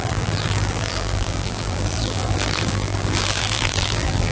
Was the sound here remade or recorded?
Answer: remade